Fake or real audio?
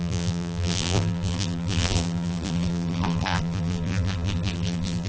fake